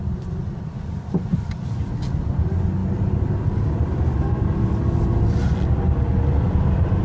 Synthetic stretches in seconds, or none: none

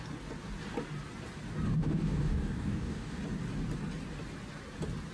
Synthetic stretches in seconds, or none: 1.8-3.2 (codec, DAC)